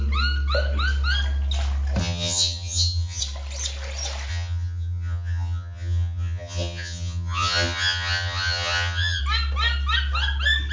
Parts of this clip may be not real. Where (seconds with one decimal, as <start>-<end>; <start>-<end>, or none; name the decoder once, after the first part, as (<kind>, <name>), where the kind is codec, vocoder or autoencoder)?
2.0-3.2 (vocoder, HiFi-GAN); 4.3-9.2